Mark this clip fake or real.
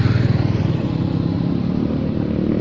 real